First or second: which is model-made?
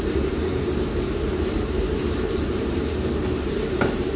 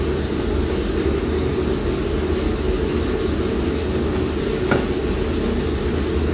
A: first